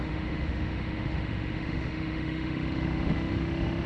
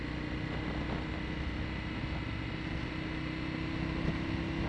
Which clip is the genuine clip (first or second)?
second